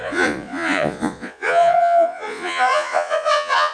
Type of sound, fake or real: fake